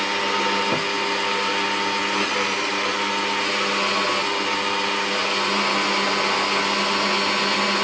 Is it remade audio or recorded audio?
recorded